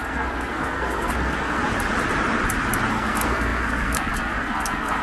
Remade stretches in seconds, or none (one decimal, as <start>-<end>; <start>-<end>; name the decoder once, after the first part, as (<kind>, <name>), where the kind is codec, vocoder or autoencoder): 0.0-1.6 (codec, SNAC); 2.9-5.0